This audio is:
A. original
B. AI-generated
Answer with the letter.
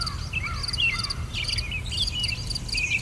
A